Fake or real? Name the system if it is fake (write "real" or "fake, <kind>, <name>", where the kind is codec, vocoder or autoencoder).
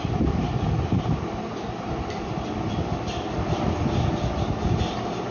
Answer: real